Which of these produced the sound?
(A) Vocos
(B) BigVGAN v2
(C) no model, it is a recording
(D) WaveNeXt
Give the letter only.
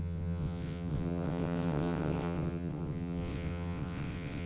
D